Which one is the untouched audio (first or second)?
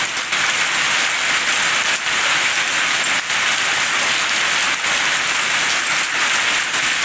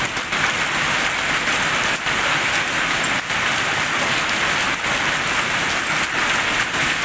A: first